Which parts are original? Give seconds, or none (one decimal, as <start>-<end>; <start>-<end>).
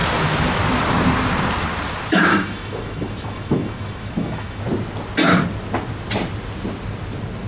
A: 0.0-2.3; 4.6-7.5